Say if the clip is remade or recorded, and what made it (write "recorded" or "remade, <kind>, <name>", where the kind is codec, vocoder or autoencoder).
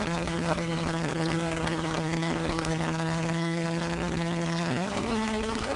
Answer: remade, codec, SNAC